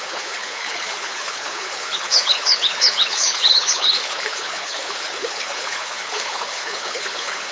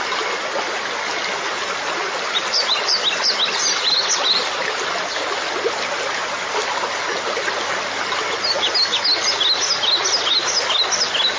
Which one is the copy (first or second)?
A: first